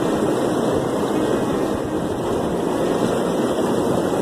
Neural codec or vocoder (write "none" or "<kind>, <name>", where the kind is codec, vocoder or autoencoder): none